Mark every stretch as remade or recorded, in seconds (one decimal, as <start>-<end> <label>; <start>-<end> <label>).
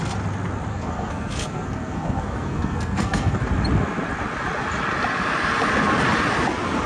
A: 0.0-0.7 recorded; 0.7-3.4 remade; 3.4-6.9 recorded